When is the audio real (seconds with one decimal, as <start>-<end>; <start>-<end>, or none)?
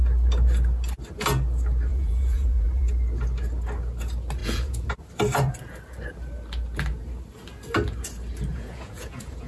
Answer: 0.0-1.9; 2.9-4.4; 4.9-8.5